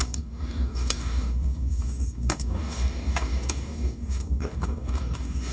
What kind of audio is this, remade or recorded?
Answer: remade